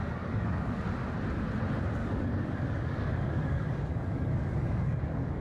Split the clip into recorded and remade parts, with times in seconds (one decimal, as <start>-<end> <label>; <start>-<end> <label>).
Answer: 0.0-0.8 remade; 0.8-2.0 recorded; 2.0-5.4 remade